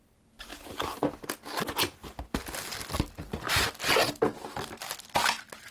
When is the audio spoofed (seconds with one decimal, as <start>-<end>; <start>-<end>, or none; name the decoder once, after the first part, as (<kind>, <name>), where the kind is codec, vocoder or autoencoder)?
none